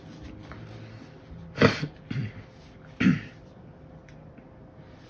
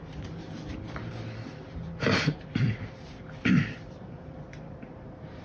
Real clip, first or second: first